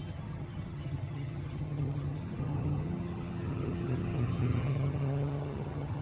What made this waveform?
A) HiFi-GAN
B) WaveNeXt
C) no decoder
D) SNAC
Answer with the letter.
A